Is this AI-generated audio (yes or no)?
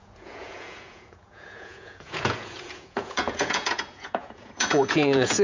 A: yes